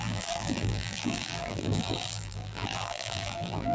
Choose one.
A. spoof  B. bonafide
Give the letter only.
A